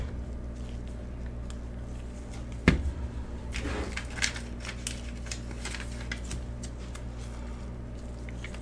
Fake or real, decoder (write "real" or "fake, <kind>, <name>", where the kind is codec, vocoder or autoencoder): real